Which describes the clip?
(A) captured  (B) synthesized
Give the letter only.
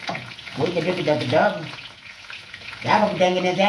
B